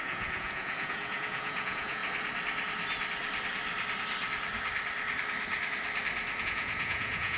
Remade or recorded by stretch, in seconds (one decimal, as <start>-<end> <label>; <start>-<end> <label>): 0.0-2.0 remade; 2.0-6.4 recorded; 6.4-7.4 remade

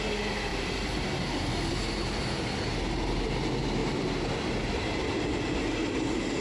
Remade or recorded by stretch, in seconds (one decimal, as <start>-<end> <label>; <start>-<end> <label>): 0.0-0.5 recorded; 0.5-1.7 remade; 1.7-6.4 recorded

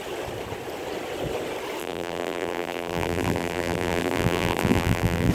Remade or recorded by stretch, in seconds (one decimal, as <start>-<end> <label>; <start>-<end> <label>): 0.0-1.8 recorded; 1.8-5.3 remade

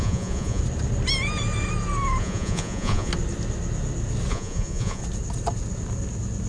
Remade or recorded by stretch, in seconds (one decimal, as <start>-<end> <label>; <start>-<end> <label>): 0.0-0.6 remade; 0.6-2.2 recorded; 2.2-3.1 remade; 3.1-4.3 recorded; 4.3-5.0 remade; 5.0-6.5 recorded

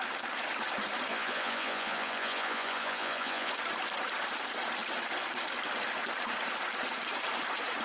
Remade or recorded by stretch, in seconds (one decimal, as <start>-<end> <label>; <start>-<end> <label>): 0.0-1.1 recorded; 1.1-3.5 remade; 3.5-7.8 recorded

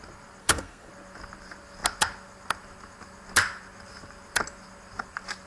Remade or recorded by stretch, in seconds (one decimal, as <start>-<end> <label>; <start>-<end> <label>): 0.0-0.4 recorded; 0.4-0.9 remade; 0.9-5.5 recorded

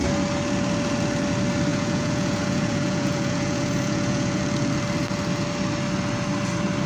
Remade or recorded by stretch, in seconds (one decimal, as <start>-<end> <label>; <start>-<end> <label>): 0.0-1.7 recorded; 1.7-4.4 remade; 4.4-6.9 recorded